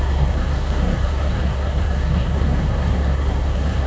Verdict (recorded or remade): remade